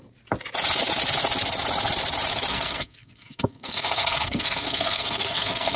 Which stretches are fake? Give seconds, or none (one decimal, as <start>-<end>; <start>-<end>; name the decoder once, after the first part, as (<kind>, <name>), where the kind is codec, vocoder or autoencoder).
2.5-5.8 (codec, SNAC)